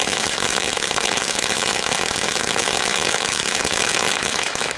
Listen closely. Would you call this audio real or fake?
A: fake